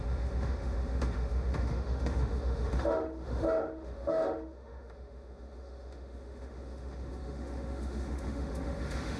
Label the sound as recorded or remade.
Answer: remade